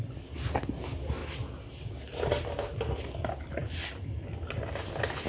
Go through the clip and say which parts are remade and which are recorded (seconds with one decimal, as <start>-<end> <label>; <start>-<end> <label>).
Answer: 0.0-5.3 recorded